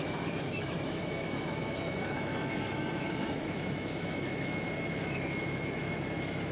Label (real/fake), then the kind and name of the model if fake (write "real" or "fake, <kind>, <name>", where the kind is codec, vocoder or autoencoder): fake, autoencoder, DAC-VAE